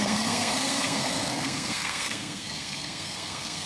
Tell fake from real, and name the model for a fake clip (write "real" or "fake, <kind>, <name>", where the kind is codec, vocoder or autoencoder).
fake, codec, SNAC